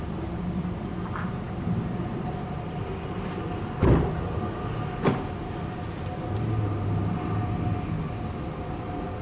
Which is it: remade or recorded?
recorded